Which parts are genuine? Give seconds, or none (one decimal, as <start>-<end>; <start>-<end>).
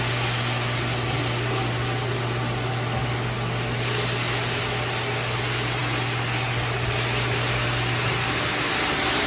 0.0-9.3